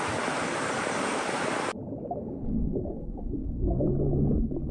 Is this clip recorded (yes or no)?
yes